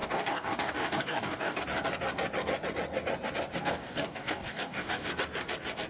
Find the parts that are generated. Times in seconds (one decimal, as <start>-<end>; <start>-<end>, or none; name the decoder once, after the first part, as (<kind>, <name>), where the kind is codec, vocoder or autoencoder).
0.0-1.6 (codec, DAC); 3.6-5.1